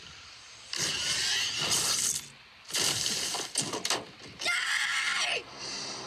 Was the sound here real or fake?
fake